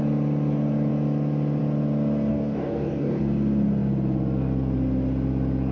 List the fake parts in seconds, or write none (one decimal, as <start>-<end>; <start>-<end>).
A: 2.3-3.2